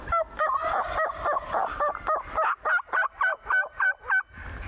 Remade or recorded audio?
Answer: recorded